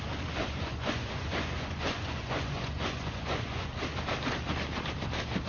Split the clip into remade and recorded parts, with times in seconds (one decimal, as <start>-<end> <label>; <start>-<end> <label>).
0.0-0.4 recorded; 0.4-3.7 remade; 3.7-5.5 recorded